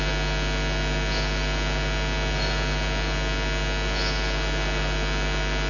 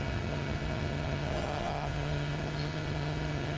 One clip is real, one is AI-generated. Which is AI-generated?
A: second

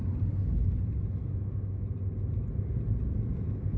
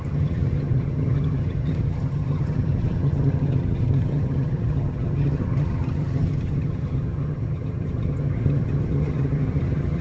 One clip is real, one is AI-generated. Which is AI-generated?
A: second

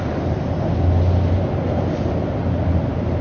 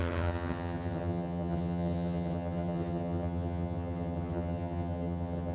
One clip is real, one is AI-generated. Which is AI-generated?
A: second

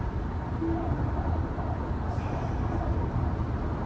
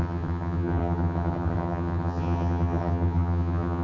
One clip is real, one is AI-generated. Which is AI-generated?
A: second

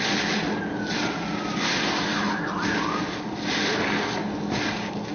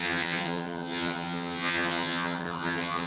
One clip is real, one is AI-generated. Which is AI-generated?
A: second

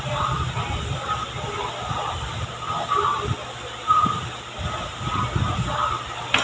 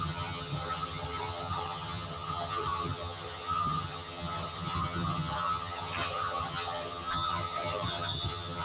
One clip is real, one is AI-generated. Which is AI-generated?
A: second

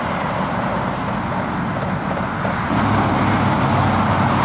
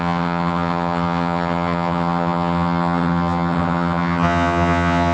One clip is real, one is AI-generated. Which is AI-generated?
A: second